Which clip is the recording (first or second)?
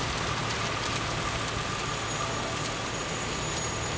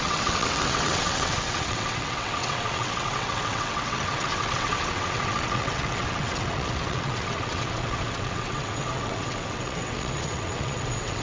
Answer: first